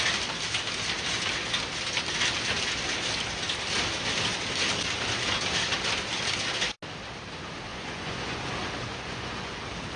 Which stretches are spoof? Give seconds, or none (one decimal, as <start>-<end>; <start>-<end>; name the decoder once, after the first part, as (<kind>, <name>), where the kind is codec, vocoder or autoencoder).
7.7-8.5 (vocoder, Vocos); 8.9-9.5